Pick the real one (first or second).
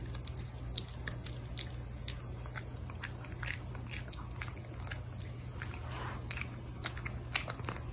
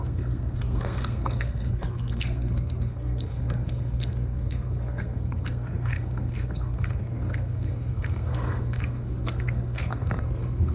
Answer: first